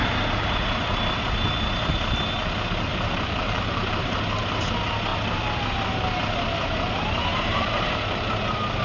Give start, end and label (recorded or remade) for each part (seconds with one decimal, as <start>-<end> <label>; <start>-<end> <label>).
0.0-2.9 recorded; 2.9-4.2 remade; 4.2-5.1 recorded; 5.1-5.6 remade; 5.6-7.3 recorded; 7.3-8.4 remade; 8.4-8.8 recorded